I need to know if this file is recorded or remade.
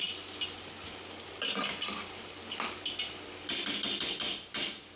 recorded